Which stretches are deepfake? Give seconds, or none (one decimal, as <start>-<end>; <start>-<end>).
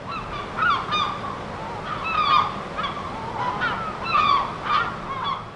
none